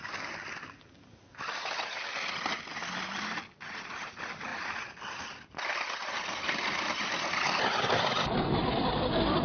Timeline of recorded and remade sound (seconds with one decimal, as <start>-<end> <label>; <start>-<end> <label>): 0.0-9.4 recorded